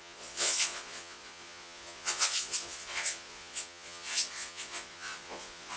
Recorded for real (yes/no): no